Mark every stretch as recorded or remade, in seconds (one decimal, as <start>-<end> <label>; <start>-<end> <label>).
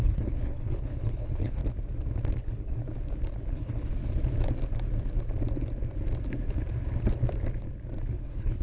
0.0-1.6 remade; 1.6-2.4 recorded; 2.4-2.8 remade; 2.8-3.5 recorded; 3.5-3.9 remade; 3.9-8.1 recorded; 8.1-8.6 remade